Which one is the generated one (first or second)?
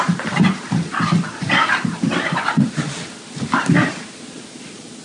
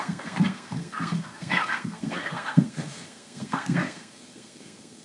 second